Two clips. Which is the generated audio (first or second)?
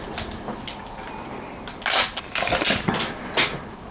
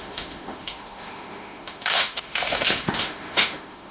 second